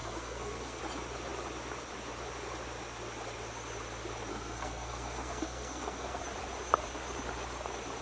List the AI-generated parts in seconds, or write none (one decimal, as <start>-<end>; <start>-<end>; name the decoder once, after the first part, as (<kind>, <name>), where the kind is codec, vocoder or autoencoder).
0.0-0.8 (codec, SNAC); 4.3-6.2